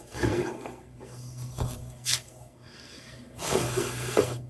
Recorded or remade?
remade